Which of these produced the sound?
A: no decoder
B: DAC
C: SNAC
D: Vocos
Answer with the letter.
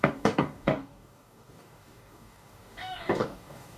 B